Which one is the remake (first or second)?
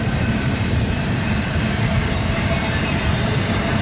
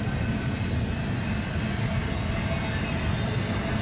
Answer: first